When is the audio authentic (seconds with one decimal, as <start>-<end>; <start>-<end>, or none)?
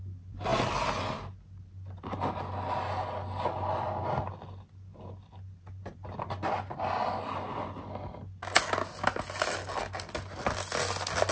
0.0-11.3